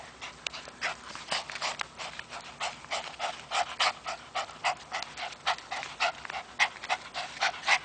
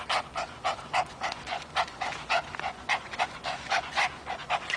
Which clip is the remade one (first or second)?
second